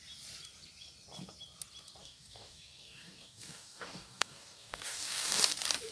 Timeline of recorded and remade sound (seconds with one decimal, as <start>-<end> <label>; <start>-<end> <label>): 0.0-2.0 recorded; 2.0-5.4 remade; 5.4-5.9 recorded